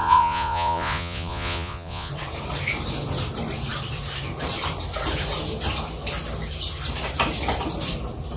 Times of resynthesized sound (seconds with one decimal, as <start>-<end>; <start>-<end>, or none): 0.0-2.1